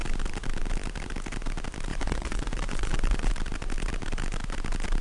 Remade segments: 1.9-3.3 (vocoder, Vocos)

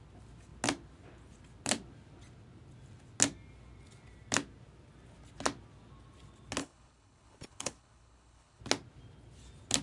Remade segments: 6.6-8.6 (codec, HILCodec)

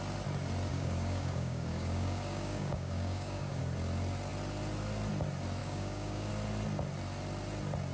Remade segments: 0.7-3.6 (codec, DAC); 5.6-6.3

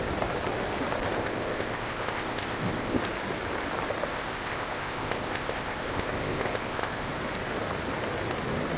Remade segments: 1.2-3.0 (codec, ZipCodec); 4.1-7.1